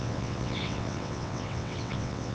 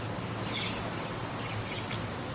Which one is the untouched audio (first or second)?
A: second